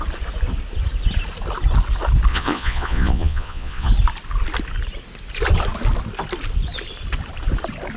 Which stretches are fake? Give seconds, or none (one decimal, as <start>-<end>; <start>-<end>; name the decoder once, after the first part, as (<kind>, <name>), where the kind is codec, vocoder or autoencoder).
2.3-3.9 (vocoder, Vocos)